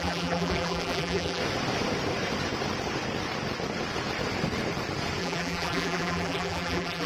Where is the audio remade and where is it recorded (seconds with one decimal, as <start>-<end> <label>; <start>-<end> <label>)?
0.0-1.4 remade; 1.4-5.2 recorded; 5.2-7.1 remade